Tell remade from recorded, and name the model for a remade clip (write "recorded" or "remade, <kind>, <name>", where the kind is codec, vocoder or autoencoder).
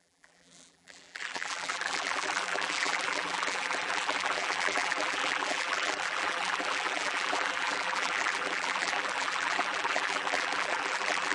remade, vocoder, BigVGAN v2